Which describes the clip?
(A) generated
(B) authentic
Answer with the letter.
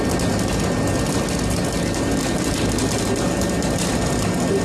B